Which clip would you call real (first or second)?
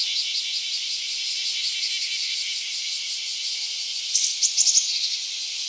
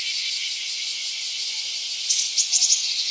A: first